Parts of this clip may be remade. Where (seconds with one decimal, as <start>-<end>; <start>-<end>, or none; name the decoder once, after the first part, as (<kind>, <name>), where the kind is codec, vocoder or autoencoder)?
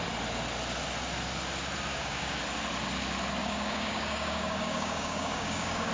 1.9-2.4 (codec, DAC); 3.4-5.9